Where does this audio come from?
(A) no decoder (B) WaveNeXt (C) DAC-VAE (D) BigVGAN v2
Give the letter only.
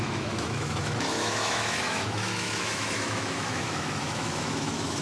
C